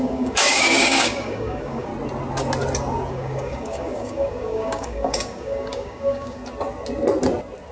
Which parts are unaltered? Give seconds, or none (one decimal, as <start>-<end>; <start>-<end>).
1.9-3.1; 6.4-7.7

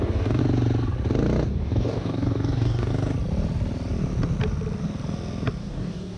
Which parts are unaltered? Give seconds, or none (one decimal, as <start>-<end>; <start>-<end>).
0.4-1.5; 2.9-5.6

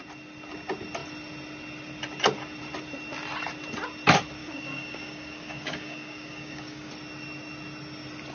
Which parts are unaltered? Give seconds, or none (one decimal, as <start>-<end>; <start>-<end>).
0.0-4.4; 6.9-8.3

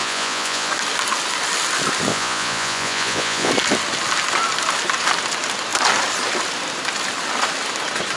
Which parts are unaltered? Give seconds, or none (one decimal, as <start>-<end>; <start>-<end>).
0.7-2.1; 3.5-8.2

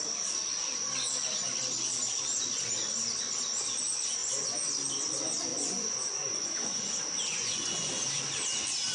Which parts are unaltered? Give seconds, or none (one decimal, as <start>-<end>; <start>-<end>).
0.0-4.2; 4.7-5.5; 6.8-7.3; 7.9-8.9